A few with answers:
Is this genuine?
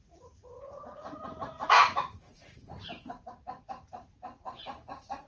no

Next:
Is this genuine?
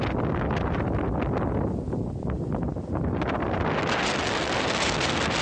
yes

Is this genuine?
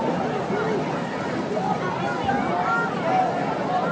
yes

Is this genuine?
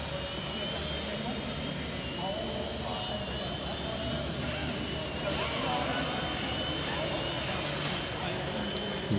yes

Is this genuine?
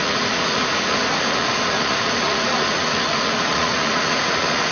no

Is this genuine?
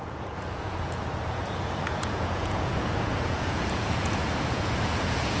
no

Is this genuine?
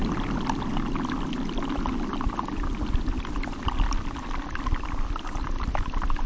yes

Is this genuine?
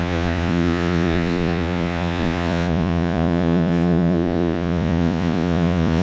no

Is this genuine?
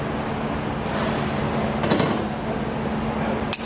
yes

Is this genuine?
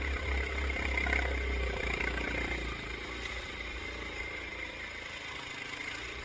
yes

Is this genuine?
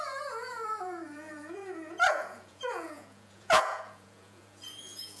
no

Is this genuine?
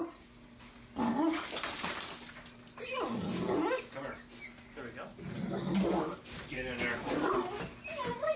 yes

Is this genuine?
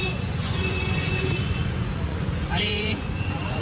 no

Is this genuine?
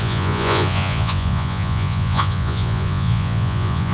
no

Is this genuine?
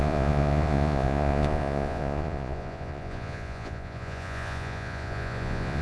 no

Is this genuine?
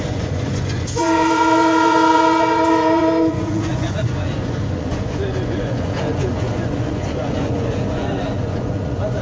no